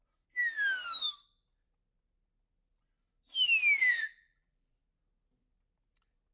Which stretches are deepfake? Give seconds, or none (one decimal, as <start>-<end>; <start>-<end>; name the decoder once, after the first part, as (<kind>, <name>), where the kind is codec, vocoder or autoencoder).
3.8-4.7 (vocoder, BigVGAN v2)